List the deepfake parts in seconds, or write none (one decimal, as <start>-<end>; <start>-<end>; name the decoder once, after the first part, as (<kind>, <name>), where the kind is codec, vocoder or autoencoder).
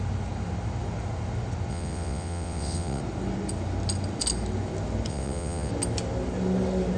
1.7-3.0 (vocoder, WaveNeXt); 5.1-5.7